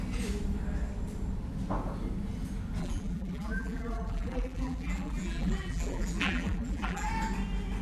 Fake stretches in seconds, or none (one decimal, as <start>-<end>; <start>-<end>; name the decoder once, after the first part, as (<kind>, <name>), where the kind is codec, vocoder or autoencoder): 2.8-7.1 (vocoder, BigVGAN v2)